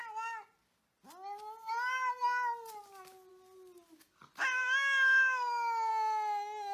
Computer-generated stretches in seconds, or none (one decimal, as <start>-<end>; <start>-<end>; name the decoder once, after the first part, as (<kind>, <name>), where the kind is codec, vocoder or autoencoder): 4.6-5.9 (codec, DAC)

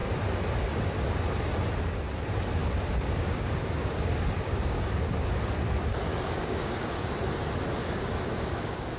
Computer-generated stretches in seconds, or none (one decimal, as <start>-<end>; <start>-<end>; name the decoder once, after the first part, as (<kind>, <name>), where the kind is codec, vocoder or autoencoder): 2.6-5.3 (codec, DAC); 6.1-7.0; 7.8-9.0

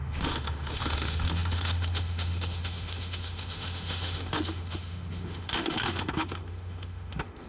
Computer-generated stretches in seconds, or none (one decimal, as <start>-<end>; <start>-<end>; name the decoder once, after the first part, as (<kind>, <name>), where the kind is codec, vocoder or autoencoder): 0.0-7.5 (autoencoder, DAC-VAE)

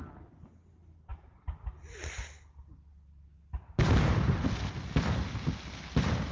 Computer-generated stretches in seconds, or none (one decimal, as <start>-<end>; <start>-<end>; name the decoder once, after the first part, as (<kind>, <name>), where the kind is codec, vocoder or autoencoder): none

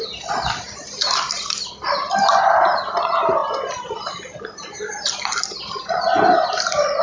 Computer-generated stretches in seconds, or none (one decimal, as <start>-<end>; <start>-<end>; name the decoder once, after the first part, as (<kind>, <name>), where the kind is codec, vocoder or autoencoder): none

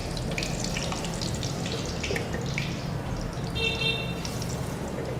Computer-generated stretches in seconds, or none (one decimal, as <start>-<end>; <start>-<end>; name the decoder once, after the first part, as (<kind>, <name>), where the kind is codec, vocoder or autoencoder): none

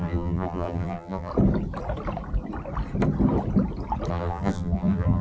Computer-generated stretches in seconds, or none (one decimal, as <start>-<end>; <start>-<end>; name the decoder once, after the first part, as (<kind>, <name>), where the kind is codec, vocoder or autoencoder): 0.0-1.3 (vocoder, BigVGAN v2); 4.1-5.2